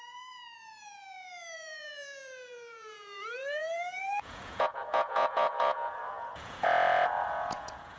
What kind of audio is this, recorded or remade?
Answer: remade